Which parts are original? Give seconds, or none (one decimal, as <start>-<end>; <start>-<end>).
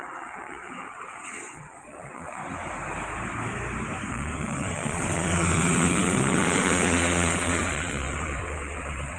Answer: 2.4-4.1